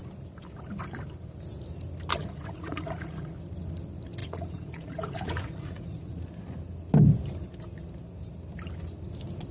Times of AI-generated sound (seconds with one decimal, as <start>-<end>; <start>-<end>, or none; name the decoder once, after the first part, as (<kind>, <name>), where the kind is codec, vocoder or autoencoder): 2.2-3.3 (vocoder, Vocos); 4.2-6.2